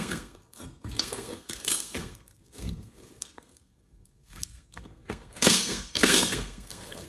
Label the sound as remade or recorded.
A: remade